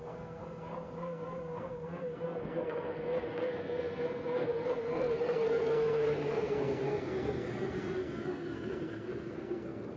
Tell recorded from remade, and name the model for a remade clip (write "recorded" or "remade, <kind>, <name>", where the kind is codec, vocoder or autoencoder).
remade, codec, SNAC